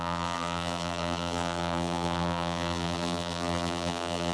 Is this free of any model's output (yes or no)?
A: no